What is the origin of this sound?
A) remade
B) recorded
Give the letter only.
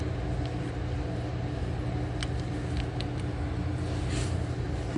B